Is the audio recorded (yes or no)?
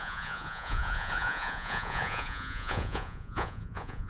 no